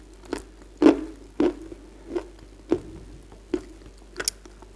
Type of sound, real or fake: real